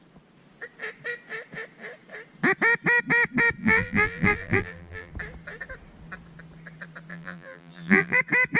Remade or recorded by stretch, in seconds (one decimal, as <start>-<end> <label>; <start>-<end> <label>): 0.0-3.6 recorded; 3.6-5.1 remade; 5.1-7.1 recorded; 7.1-8.2 remade; 8.2-8.6 recorded